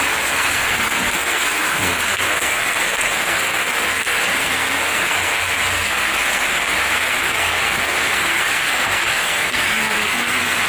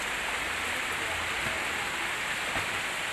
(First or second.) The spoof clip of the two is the first